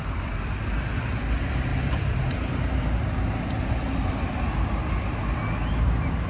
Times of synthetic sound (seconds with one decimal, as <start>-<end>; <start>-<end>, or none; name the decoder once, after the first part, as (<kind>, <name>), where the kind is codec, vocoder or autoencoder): none